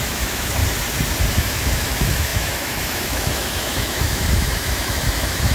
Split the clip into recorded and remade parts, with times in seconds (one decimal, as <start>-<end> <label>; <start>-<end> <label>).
0.0-0.6 remade; 0.6-1.3 recorded; 1.3-5.5 remade